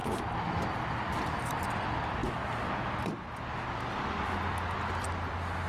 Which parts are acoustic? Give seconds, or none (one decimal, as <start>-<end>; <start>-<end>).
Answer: 0.0-5.7